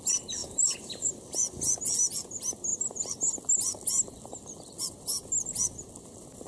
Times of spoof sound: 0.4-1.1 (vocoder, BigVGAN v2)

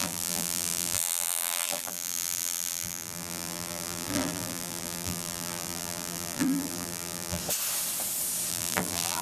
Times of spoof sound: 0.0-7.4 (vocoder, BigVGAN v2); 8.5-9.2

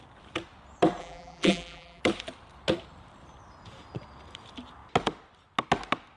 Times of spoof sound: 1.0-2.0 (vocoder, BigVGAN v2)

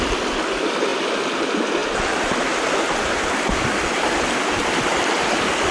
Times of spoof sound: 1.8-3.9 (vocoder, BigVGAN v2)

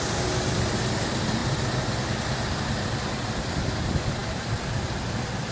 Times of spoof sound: 0.0-5.5 (vocoder, BigVGAN v2)

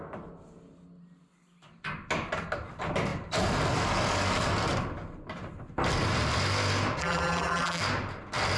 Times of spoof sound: 7.0-7.8 (vocoder, BigVGAN v2)

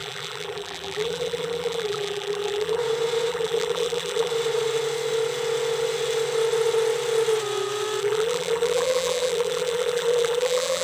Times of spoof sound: 0.0-2.8 (vocoder, BigVGAN v2); 3.3-4.3; 8.0-10.8